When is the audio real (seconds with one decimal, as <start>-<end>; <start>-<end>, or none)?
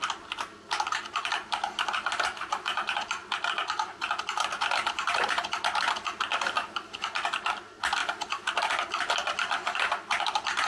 3.2-4.7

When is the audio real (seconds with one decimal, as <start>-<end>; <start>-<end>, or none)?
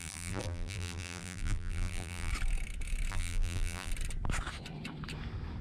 2.3-3.1; 3.9-5.6